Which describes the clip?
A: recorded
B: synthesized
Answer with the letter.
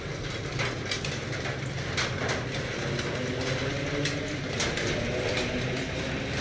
A